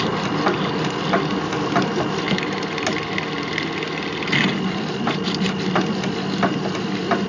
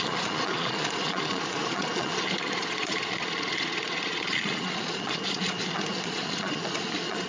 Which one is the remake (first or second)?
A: second